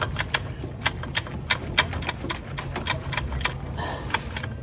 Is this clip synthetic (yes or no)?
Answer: no